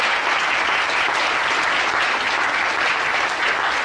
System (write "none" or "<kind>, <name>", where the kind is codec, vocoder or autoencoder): none